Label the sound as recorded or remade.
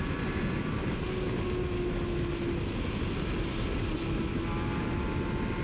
recorded